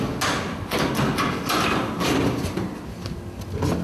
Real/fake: real